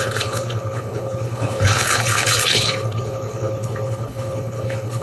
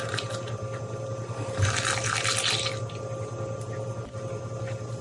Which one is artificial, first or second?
first